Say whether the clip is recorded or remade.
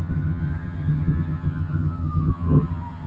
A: remade